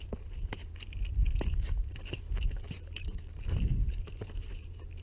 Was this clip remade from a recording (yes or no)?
yes